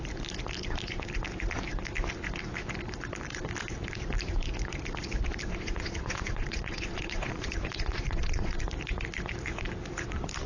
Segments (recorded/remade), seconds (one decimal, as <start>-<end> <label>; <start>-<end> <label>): 0.0-5.5 recorded; 5.5-8.6 remade; 8.6-10.5 recorded